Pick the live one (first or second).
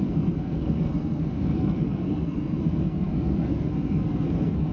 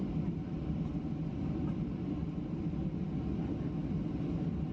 second